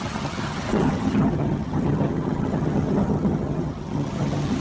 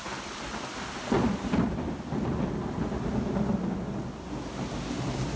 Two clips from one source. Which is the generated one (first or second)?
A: first